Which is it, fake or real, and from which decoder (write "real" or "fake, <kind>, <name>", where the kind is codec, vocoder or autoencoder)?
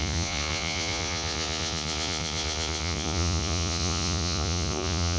fake, vocoder, Vocos